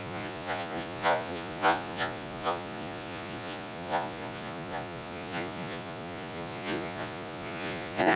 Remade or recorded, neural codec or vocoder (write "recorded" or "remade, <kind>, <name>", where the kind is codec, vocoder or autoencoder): remade, vocoder, Vocos